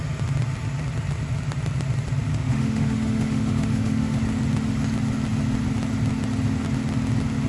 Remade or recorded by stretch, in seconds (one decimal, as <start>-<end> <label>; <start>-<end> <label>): 0.0-2.3 recorded; 2.3-4.2 remade; 4.2-7.5 recorded